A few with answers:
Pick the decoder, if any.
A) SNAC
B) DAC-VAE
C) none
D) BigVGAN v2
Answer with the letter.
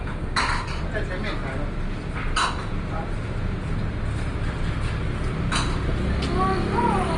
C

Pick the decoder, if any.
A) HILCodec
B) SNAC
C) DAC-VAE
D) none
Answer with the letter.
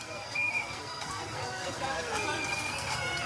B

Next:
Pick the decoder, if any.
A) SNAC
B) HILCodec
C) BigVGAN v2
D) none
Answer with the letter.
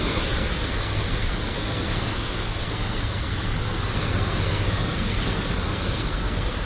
A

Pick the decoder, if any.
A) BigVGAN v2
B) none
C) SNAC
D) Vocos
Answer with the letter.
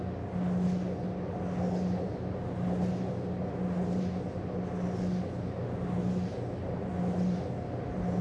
B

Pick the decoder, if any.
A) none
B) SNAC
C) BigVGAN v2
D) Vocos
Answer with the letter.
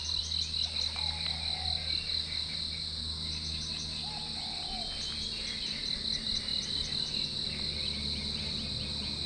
A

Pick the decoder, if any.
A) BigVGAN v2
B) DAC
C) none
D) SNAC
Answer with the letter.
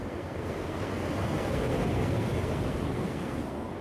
D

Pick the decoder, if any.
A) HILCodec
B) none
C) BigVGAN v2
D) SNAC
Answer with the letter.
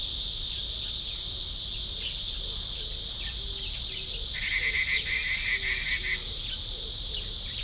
B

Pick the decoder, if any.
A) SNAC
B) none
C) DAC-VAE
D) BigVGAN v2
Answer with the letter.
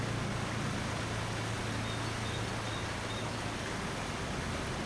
B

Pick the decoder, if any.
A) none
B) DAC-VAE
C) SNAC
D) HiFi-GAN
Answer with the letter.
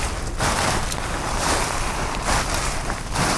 A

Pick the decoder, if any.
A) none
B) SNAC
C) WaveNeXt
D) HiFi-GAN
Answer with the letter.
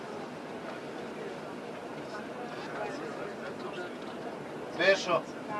A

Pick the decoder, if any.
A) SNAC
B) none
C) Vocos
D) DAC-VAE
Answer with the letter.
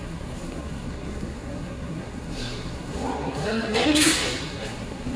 A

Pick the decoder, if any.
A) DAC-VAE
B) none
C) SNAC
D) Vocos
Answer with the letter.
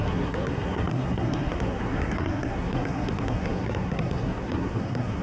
C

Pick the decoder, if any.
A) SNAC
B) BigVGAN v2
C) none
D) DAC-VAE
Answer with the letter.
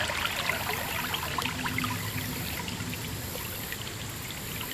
C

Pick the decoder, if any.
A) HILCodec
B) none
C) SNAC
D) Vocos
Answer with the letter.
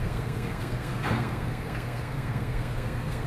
C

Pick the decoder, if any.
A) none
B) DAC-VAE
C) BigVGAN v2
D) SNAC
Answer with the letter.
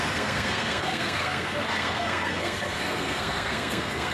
D